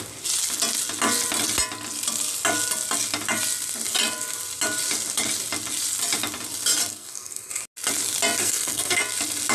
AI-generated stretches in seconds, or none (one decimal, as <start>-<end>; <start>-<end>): 6.9-7.5; 8.4-9.0